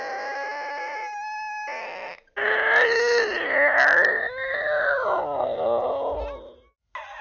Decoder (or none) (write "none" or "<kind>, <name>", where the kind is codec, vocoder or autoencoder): none